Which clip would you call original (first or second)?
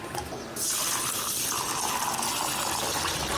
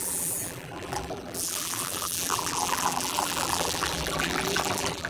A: first